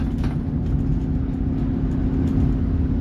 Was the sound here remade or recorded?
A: recorded